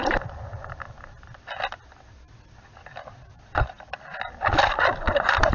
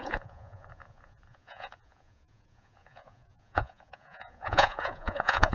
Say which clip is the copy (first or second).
second